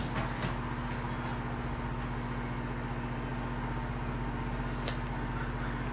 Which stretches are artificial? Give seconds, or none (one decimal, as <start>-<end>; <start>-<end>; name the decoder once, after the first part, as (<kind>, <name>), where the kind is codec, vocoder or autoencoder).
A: none